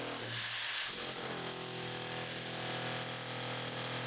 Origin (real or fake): real